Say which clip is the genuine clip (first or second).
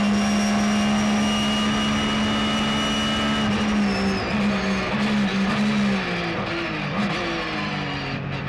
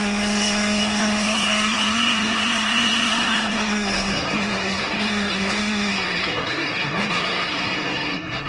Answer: first